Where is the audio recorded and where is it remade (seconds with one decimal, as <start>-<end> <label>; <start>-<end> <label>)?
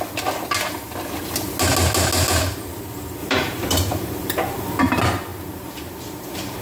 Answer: 0.0-3.2 recorded; 3.2-4.8 remade; 4.8-5.3 recorded; 5.3-6.6 remade